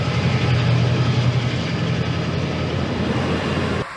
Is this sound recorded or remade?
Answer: recorded